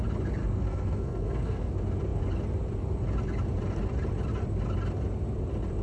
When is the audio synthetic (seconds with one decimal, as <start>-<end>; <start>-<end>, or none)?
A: 0.4-1.7